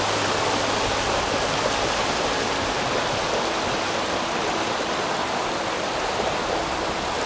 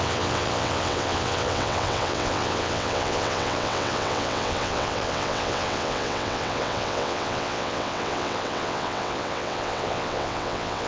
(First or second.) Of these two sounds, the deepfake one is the second